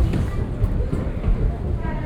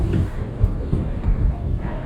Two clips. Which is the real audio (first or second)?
first